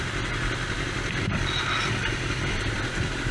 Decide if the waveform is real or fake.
real